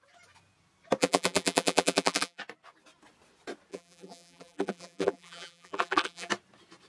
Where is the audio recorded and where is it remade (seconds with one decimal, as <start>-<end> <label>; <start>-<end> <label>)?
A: 0.0-1.0 recorded; 1.0-2.4 remade; 2.4-3.7 recorded; 3.7-6.3 remade; 6.3-6.9 recorded